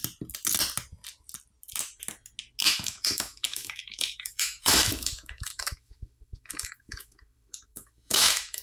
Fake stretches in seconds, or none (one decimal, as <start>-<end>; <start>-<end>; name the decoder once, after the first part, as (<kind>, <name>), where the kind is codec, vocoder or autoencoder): 2.6-8.6 (autoencoder, DAC-VAE)